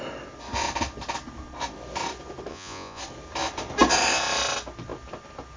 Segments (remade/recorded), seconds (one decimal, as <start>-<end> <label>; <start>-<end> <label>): 0.0-2.5 recorded; 2.5-3.0 remade; 3.0-5.6 recorded